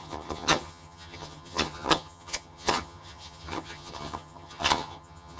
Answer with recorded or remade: remade